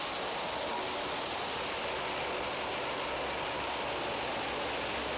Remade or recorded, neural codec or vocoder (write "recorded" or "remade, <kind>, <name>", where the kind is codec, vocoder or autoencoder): recorded